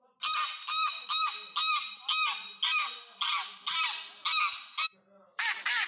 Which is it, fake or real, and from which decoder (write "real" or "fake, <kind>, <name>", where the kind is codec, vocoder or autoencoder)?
real